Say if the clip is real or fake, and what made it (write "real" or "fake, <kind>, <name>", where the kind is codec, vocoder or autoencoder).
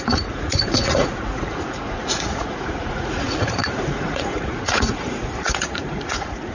fake, vocoder, Vocos